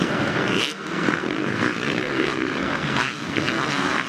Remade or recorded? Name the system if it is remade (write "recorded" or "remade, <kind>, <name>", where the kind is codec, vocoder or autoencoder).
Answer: remade, codec, SNAC